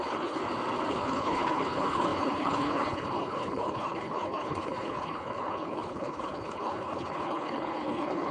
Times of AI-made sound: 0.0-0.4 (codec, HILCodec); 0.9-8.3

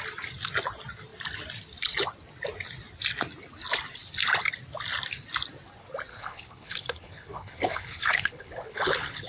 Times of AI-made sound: 6.1-9.3 (codec, HILCodec)

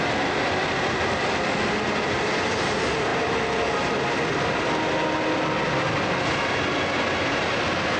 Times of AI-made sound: none

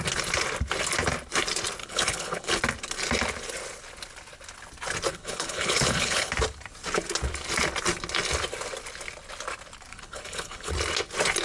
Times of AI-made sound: 1.8-2.6 (codec, HILCodec); 5.1-6.3; 9.9-10.7

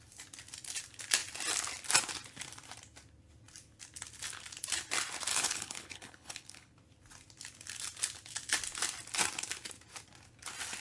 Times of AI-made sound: 5.3-6.7 (codec, HILCodec)

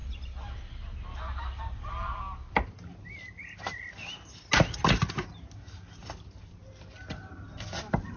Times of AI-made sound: none

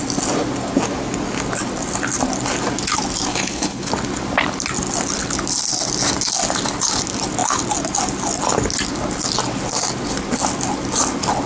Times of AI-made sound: 3.3-3.9 (codec, HILCodec)